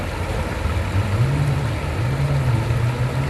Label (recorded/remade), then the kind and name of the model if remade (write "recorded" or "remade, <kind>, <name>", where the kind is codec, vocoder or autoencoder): recorded